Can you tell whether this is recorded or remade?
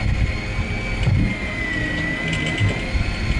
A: recorded